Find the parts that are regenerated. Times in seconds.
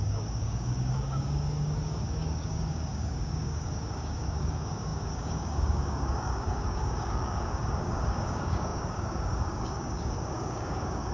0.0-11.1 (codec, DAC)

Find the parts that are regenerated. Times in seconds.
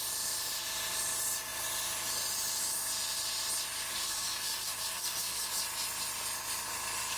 3.9-5.5 (codec, SNAC)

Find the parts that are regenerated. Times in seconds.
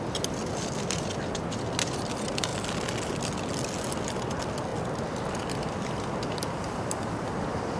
none